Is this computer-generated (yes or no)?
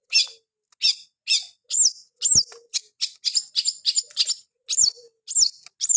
no